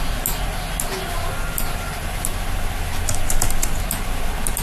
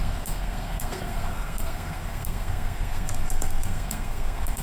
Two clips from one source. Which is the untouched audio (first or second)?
first